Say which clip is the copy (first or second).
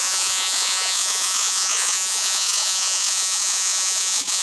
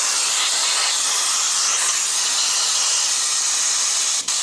first